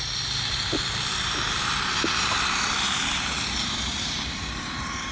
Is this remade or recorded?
remade